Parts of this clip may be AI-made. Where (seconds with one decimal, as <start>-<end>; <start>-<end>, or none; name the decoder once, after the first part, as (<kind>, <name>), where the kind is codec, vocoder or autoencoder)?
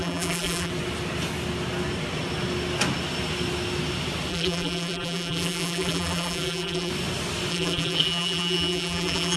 0.0-0.7 (vocoder, BigVGAN v2); 4.3-6.9; 7.5-9.4